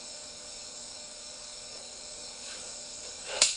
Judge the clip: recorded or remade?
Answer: remade